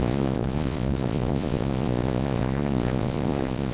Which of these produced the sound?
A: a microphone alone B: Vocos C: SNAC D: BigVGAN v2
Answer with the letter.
B